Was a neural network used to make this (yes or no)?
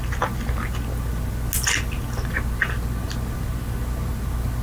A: no